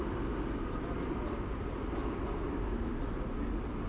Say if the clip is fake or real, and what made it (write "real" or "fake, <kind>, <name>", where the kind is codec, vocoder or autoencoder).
real